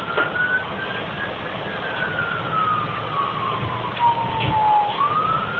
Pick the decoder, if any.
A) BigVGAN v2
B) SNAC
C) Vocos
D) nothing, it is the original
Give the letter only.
D